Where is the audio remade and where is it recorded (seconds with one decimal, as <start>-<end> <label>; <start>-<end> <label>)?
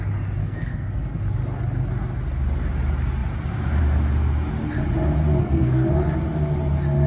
0.0-0.4 recorded; 0.4-1.2 remade; 1.2-5.4 recorded; 5.4-5.9 remade; 5.9-7.1 recorded